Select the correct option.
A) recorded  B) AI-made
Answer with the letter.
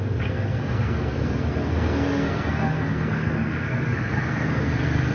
B